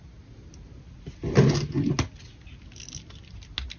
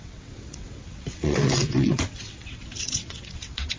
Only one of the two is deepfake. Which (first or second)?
second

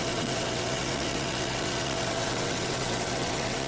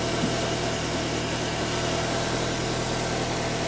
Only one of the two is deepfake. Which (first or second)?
first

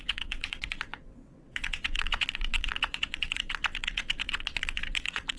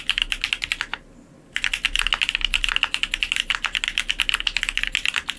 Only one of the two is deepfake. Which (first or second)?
first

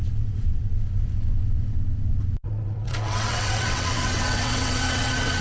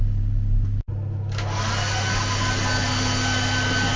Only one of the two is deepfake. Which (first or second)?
first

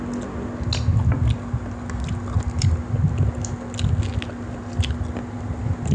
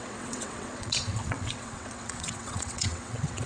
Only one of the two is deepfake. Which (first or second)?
second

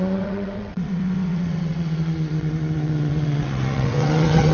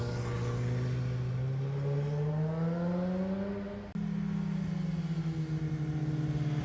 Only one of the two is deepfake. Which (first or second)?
first